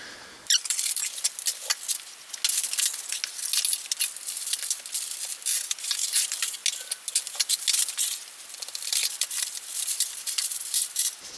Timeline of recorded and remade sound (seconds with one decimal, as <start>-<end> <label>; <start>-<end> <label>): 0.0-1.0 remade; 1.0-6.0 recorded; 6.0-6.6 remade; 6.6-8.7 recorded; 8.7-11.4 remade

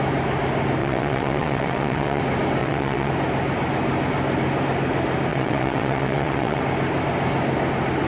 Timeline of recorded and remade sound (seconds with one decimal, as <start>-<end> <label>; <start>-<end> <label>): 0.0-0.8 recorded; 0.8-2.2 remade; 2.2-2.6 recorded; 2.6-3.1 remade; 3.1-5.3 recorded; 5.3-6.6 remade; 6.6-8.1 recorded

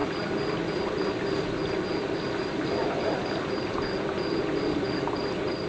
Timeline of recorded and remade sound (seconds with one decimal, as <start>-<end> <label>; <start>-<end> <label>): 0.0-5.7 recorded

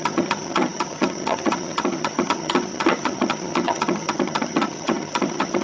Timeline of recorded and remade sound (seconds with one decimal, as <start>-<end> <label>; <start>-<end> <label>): 0.0-5.6 remade

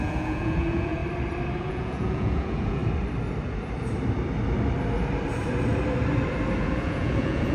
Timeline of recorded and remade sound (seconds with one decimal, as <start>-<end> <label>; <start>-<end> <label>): 0.0-1.0 remade; 1.0-1.6 recorded; 1.6-2.8 remade; 2.8-6.6 recorded; 6.6-7.5 remade

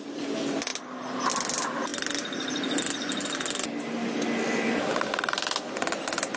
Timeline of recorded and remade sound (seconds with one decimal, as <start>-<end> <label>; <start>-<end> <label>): 0.0-6.4 recorded

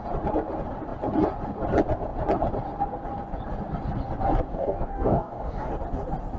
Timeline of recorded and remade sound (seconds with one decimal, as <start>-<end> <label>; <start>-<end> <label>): 0.0-4.5 recorded; 4.5-5.7 remade; 5.7-6.4 recorded